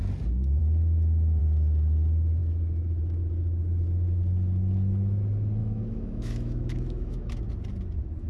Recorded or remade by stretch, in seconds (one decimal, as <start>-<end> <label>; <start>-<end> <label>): 0.0-5.6 recorded; 5.6-7.4 remade; 7.4-8.3 recorded